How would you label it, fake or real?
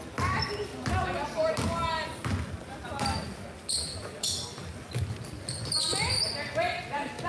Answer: real